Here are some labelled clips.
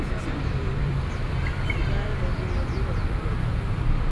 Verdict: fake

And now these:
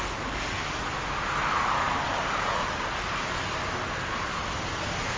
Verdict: real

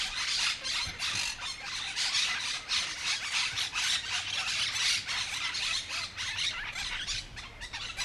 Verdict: real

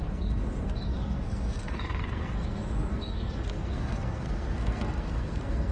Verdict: fake